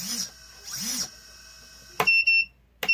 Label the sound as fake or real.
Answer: real